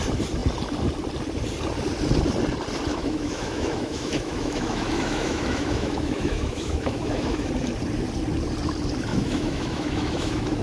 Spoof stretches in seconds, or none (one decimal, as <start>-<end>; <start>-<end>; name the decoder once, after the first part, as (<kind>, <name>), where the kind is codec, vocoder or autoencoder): 2.9-7.5 (autoencoder, DAC-VAE); 9.1-10.6